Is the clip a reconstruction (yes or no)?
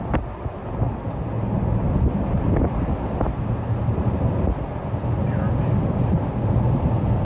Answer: no